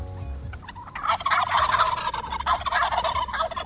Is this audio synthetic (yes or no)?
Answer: no